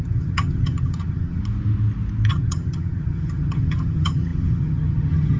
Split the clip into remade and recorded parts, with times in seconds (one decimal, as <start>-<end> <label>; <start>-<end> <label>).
0.0-1.4 remade; 1.4-2.3 recorded; 2.3-5.4 remade